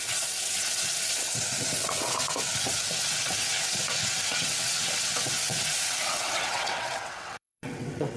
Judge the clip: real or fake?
fake